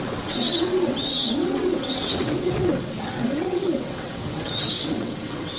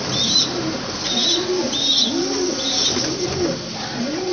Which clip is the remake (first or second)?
first